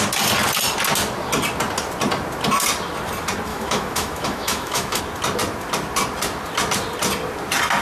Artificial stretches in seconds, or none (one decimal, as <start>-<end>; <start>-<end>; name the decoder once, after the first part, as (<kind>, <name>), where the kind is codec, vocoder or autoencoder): 3.5-5.0 (autoencoder, DAC-VAE)

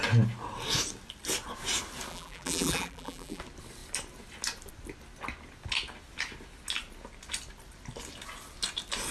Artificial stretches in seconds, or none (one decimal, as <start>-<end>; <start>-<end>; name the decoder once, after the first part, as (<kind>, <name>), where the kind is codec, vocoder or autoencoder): 2.1-3.4 (vocoder, BigVGAN v2)

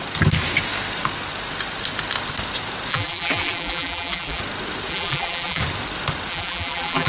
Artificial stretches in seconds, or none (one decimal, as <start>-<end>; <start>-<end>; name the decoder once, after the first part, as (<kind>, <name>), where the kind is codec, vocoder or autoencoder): 2.9-4.4 (vocoder, BigVGAN v2); 4.9-5.6; 6.3-7.1

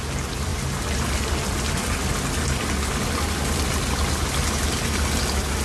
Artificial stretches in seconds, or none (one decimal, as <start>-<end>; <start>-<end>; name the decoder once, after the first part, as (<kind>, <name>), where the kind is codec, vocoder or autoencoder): none

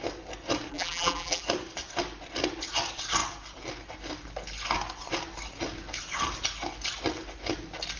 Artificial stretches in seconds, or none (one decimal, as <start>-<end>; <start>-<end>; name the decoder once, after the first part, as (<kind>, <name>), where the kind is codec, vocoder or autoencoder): 0.7-1.4 (vocoder, BigVGAN v2)